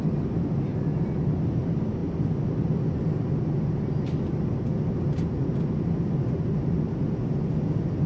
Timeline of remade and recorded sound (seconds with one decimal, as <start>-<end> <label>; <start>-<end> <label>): 0.0-8.1 recorded